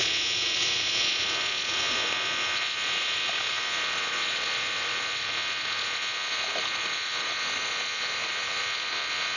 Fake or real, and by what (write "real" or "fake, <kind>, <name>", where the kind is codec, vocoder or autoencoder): fake, vocoder, Vocos